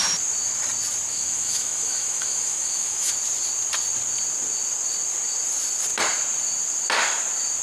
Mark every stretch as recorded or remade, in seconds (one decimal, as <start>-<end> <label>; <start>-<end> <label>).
0.0-1.1 recorded; 1.1-3.1 remade; 3.1-7.6 recorded